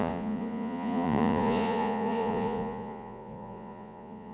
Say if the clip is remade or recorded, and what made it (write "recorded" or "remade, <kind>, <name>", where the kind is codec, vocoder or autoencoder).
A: remade, vocoder, Vocos